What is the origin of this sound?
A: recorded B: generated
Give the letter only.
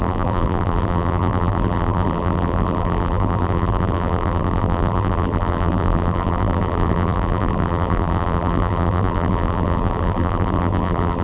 B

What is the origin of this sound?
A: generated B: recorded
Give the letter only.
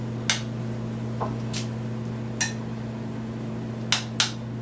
B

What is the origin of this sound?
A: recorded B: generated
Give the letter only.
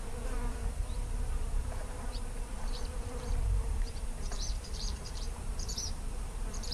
B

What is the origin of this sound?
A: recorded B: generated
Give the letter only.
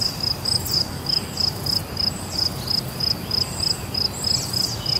A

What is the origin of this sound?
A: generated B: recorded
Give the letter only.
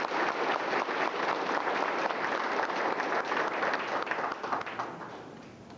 B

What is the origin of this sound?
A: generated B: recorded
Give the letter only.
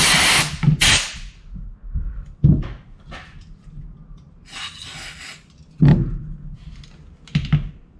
B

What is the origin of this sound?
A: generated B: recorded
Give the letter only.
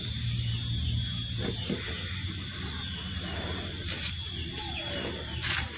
A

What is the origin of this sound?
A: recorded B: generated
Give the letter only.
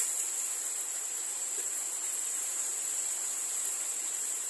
B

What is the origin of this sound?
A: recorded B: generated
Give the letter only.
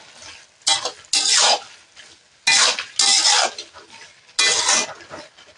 A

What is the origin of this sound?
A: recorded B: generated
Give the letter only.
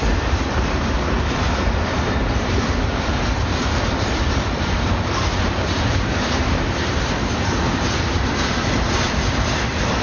B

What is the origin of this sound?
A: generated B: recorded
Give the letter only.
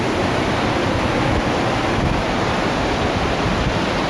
B